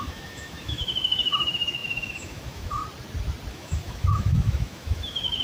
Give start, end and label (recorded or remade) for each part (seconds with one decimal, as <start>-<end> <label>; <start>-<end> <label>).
0.0-2.8 remade; 2.8-3.5 recorded; 3.5-5.4 remade